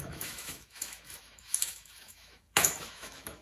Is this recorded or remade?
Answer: remade